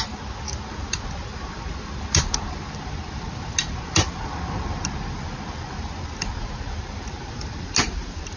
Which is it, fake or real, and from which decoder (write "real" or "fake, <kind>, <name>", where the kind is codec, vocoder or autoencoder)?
real